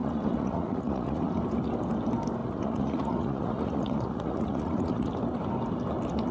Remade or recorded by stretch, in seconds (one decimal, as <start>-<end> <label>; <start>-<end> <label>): 0.0-1.3 remade; 1.3-2.4 recorded; 2.4-5.1 remade; 5.1-6.3 recorded